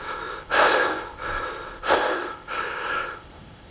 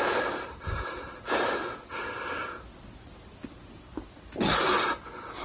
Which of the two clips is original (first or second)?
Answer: second